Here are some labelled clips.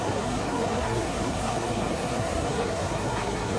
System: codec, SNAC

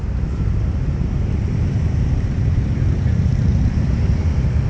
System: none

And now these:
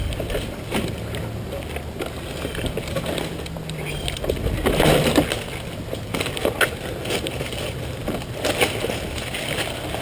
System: none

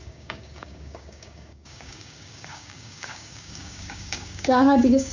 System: codec, DAC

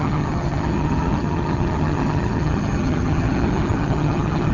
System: vocoder, HiFi-GAN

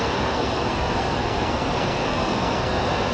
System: codec, SNAC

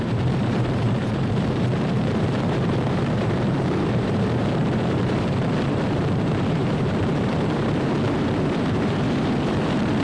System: vocoder, BigVGAN v2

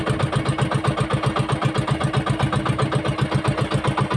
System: none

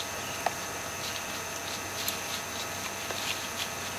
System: none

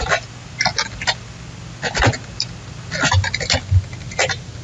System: none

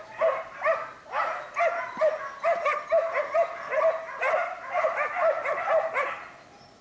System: none